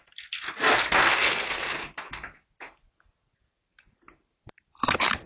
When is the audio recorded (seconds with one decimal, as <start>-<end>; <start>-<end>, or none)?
0.0-5.3